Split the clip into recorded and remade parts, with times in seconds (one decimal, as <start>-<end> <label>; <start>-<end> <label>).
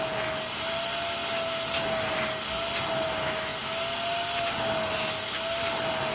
0.0-6.1 recorded